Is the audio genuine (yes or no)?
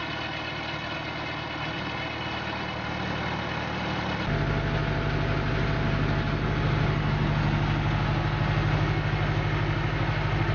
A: yes